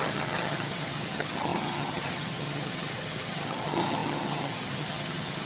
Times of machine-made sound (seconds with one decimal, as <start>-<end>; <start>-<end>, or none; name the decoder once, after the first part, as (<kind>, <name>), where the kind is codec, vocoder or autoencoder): 0.0-5.5 (vocoder, HiFi-GAN)